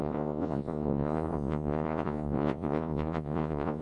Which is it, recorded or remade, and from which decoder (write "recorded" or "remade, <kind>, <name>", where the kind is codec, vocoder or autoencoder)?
remade, vocoder, Vocos